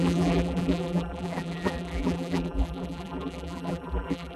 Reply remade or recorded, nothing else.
remade